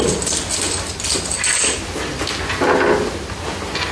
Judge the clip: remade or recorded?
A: recorded